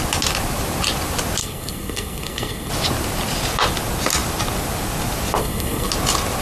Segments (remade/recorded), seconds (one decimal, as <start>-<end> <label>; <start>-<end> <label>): 0.0-1.4 recorded; 1.4-2.7 remade; 2.7-5.4 recorded; 5.4-5.9 remade; 5.9-6.4 recorded

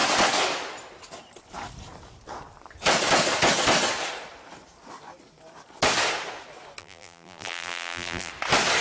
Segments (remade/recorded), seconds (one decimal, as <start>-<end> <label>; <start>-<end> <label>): 0.0-6.8 recorded; 6.8-8.3 remade; 8.3-8.8 recorded

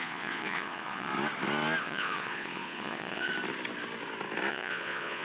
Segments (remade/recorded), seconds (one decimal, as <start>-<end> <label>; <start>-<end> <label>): 0.0-1.1 remade; 1.1-1.8 recorded; 1.8-3.3 remade; 3.3-4.5 recorded; 4.5-5.2 remade

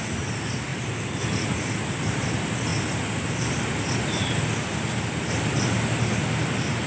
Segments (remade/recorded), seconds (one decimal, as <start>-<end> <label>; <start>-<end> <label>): 0.0-6.9 recorded

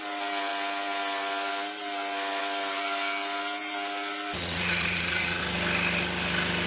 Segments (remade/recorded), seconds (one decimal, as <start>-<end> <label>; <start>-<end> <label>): 0.0-4.4 recorded; 4.4-5.4 remade; 5.4-6.7 recorded